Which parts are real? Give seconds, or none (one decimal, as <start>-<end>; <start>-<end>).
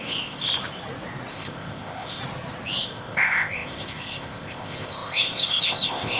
0.4-1.3; 2.2-2.8